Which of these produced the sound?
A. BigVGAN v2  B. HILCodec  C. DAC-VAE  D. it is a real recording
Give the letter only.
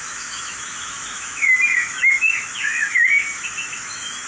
C